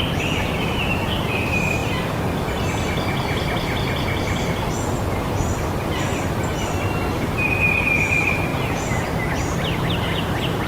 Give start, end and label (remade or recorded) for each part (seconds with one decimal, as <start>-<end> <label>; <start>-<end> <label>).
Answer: 0.0-8.5 recorded; 8.5-9.0 remade; 9.0-10.7 recorded